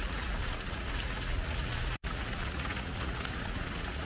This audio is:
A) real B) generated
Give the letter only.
B